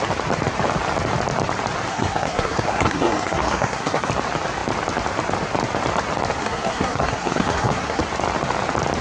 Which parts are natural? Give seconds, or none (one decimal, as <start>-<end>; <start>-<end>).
0.0-1.9; 4.1-6.4; 8.0-9.0